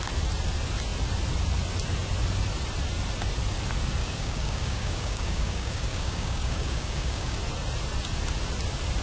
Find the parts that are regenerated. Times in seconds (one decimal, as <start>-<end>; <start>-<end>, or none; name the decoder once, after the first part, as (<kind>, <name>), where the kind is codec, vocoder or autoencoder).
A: 4.0-7.4 (codec, DAC)